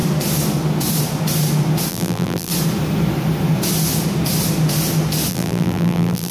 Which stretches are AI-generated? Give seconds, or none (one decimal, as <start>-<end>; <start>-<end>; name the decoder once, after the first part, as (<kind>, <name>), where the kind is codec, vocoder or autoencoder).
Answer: 1.9-2.5 (vocoder, BigVGAN v2); 5.3-6.3